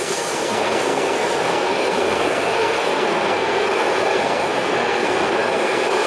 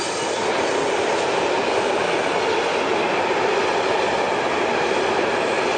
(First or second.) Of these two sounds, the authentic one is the second